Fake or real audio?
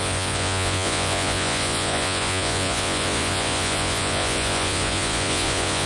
fake